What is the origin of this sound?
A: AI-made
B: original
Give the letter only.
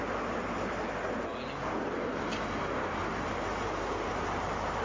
B